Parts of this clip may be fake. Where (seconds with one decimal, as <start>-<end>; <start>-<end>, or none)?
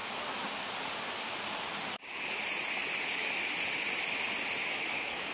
4.6-5.3